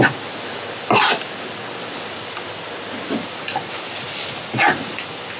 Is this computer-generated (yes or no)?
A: no